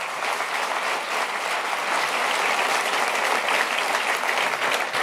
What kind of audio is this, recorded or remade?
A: recorded